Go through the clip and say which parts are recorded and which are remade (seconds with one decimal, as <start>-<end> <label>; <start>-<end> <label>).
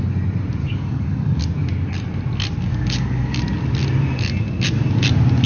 0.0-0.6 recorded; 0.6-1.4 remade; 1.4-2.7 recorded; 2.7-3.4 remade; 3.4-5.5 recorded